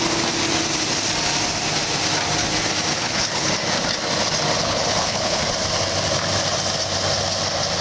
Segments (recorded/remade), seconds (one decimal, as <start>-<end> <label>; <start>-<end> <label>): 0.0-2.9 recorded; 2.9-3.5 remade; 3.5-4.6 recorded; 4.6-5.4 remade; 5.4-7.8 recorded